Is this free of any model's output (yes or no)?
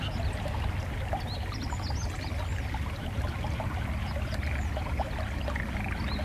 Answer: yes